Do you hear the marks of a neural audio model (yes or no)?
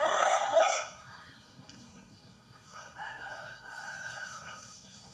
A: yes